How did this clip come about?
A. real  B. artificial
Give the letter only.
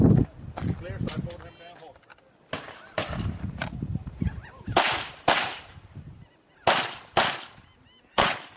A